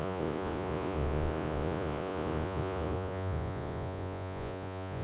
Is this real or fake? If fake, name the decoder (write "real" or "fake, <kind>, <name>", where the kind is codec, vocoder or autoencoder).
fake, vocoder, Vocos